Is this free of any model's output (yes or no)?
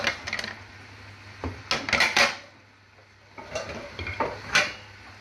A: yes